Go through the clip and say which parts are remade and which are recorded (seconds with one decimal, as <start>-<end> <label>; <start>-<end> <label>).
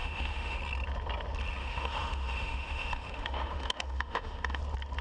0.0-0.6 remade; 0.6-1.6 recorded; 1.6-4.6 remade; 4.6-5.0 recorded